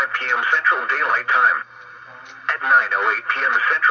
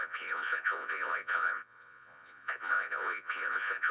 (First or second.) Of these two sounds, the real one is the first